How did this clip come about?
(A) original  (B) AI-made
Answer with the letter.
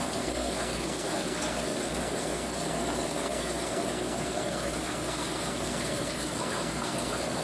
B